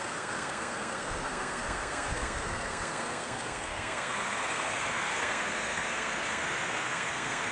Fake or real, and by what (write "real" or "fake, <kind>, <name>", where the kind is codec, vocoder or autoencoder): fake, codec, SNAC